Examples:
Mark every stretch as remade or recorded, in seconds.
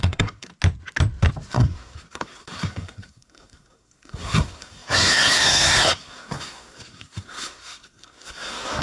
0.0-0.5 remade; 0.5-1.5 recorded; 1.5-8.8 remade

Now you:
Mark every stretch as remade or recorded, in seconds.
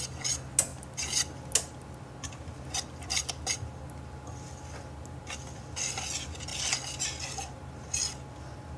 0.0-8.8 recorded